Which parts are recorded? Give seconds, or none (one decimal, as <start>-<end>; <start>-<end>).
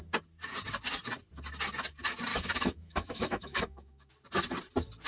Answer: 0.0-2.3; 4.1-5.1